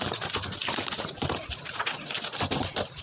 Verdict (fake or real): real